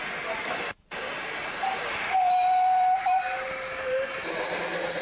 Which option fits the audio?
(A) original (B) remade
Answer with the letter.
A